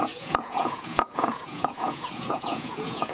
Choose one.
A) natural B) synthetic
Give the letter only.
B